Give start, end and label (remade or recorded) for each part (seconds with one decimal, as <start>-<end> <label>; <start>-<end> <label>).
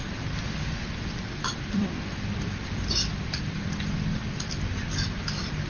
0.0-4.2 remade; 4.2-4.9 recorded; 4.9-5.7 remade